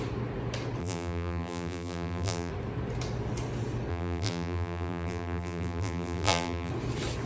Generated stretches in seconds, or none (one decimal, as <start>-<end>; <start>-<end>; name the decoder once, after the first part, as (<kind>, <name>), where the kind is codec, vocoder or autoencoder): 0.8-2.5 (vocoder, BigVGAN v2); 3.9-6.7